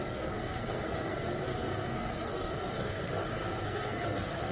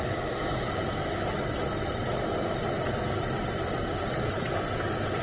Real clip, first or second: second